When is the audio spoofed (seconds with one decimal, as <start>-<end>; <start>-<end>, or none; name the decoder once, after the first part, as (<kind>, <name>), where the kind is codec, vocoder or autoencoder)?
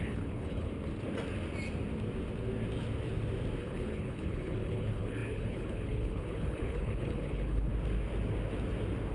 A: 0.0-0.7 (codec, HILCodec); 3.6-7.7